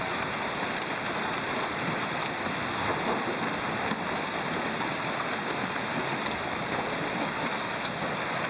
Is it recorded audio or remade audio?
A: recorded